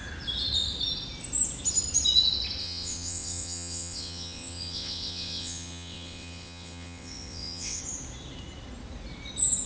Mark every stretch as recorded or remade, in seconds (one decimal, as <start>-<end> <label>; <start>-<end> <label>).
0.0-2.6 recorded; 2.6-7.8 remade; 7.8-9.7 recorded